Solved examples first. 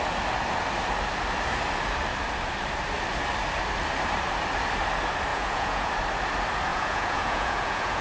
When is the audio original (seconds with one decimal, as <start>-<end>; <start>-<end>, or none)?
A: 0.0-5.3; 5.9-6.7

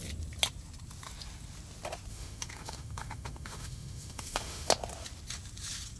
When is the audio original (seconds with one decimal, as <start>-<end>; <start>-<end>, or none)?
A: 0.0-2.1; 4.7-6.0

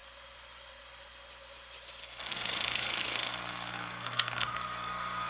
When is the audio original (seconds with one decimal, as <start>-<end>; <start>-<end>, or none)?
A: 0.0-2.0